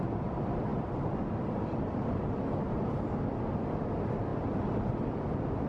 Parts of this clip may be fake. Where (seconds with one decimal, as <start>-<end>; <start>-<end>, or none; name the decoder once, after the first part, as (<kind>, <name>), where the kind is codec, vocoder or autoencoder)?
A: none

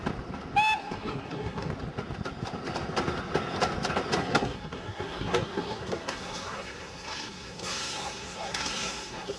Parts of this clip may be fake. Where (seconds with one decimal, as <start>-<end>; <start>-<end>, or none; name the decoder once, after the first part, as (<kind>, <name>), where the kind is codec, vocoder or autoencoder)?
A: 0.8-1.7 (codec, SNAC); 4.2-9.4

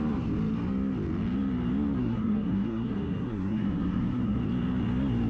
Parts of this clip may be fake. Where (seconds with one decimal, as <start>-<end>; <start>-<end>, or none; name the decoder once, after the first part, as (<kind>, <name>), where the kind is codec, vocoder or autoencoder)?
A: 2.0-4.4 (codec, SNAC)

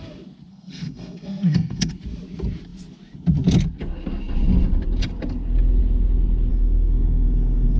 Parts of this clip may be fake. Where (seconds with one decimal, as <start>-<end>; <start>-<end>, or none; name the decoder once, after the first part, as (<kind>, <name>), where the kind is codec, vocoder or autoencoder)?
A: 0.5-1.9 (codec, SNAC); 6.5-7.8

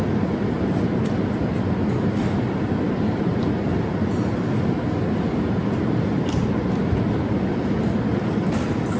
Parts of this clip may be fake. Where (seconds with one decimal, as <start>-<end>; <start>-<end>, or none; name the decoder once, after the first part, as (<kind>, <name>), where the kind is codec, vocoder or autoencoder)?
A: none

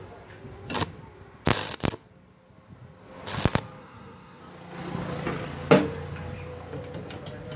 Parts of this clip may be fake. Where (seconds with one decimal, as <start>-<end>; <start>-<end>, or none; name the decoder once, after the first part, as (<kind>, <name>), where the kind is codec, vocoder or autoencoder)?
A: 3.8-4.4 (codec, SNAC)